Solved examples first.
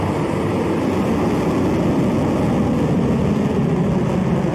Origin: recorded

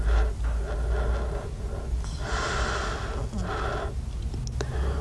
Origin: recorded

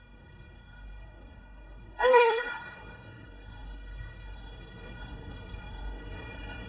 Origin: remade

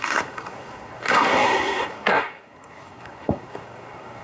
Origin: remade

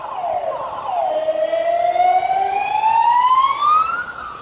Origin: recorded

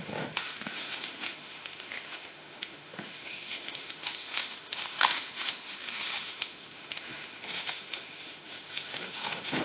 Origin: remade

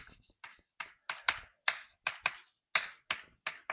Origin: recorded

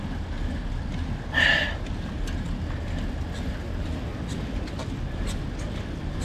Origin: recorded